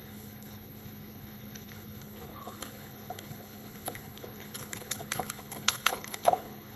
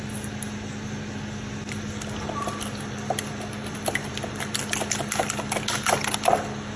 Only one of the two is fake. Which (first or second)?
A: first